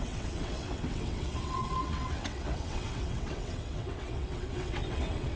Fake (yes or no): yes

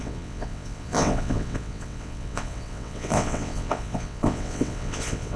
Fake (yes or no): yes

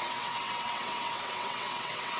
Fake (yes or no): yes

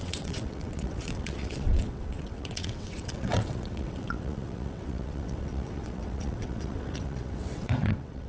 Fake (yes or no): yes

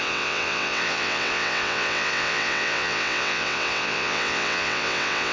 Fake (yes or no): yes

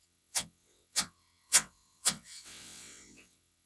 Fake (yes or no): yes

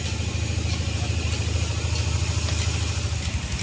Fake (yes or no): no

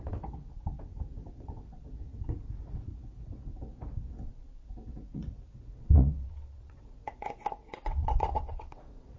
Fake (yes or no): yes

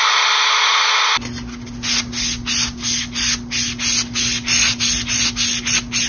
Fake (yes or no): no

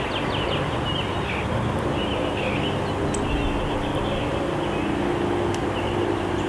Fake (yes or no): no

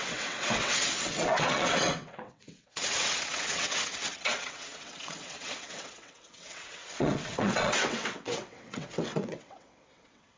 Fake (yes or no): yes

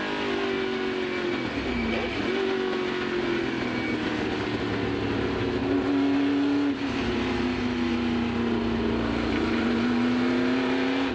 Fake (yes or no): no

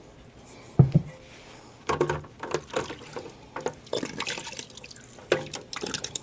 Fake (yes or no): no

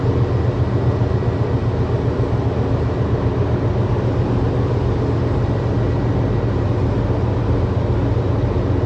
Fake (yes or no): no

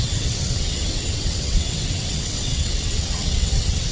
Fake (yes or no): yes